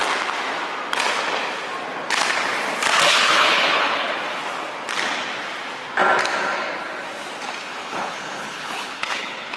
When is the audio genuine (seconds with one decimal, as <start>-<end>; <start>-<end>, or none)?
0.0-3.1; 4.1-7.8